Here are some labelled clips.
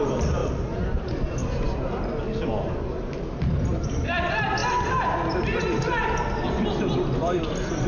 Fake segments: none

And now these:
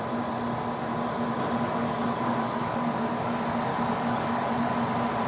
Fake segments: 1.8-3.3 (codec, DAC); 3.7-4.7

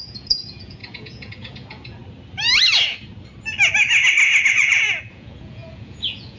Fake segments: 0.0-2.0 (vocoder, Vocos); 4.5-6.4

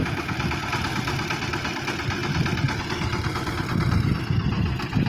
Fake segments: 0.0-5.1 (vocoder, BigVGAN v2)

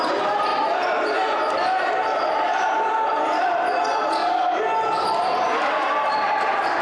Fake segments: 0.0-0.5 (vocoder, BigVGAN v2); 1.9-4.2; 5.6-6.8

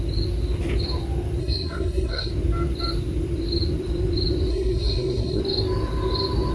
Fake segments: 1.4-2.3 (codec, SNAC); 4.5-5.4

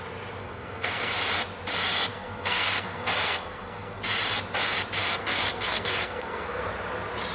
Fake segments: 0.4-1.1 (codec, SNAC); 2.1-4.0; 5.0-6.7

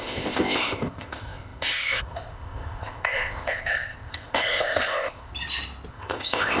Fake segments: 0.0-5.3 (codec, ZipCodec); 5.9-6.6